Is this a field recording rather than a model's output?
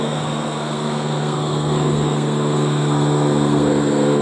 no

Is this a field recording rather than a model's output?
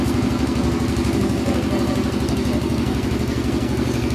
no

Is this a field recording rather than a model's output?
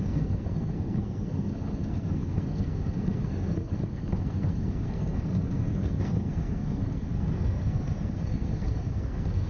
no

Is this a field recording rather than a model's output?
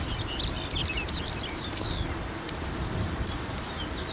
yes